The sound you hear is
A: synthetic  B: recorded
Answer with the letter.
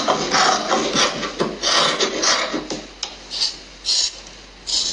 B